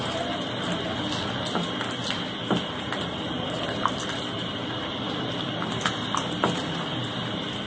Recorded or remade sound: recorded